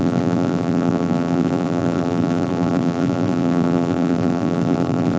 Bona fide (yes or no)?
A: no